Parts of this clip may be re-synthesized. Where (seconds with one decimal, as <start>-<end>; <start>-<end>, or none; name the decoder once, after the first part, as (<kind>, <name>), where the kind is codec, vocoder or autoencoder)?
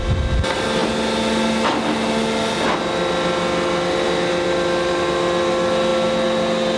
none